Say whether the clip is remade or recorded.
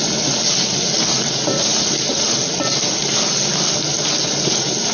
recorded